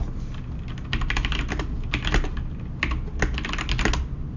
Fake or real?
real